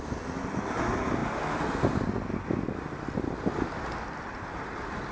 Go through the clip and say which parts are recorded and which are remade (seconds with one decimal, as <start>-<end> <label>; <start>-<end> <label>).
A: 0.0-5.1 recorded